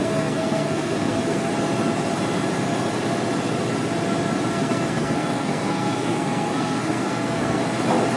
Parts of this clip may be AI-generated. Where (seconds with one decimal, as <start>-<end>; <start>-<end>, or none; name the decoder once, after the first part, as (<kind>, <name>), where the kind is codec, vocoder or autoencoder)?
0.0-1.5 (codec, SNAC); 4.5-7.6